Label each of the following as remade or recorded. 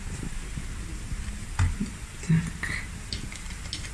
recorded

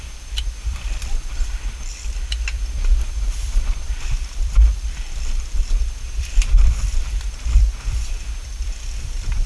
remade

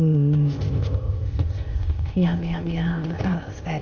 remade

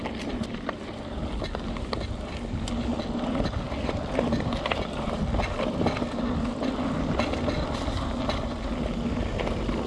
recorded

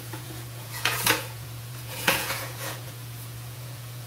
remade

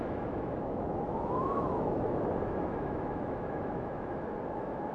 remade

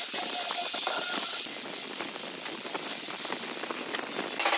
recorded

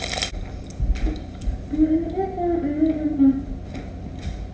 recorded